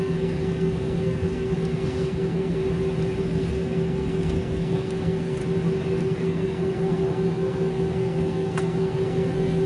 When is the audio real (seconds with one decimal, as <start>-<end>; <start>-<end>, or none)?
2.6-3.2; 5.4-6.0